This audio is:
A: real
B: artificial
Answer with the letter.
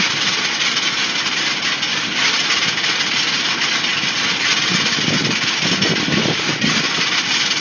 A